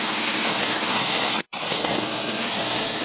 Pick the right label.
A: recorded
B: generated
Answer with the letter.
B